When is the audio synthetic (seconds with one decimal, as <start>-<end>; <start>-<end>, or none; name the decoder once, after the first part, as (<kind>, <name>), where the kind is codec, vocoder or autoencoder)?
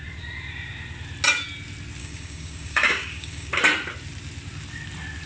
2.0-3.5 (codec, DAC)